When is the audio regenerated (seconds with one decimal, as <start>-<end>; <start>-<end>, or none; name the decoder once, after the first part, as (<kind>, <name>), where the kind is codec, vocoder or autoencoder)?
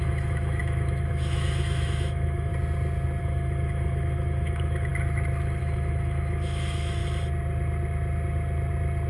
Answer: 0.0-2.5 (autoencoder, DAC-VAE); 3.2-4.9; 5.6-7.0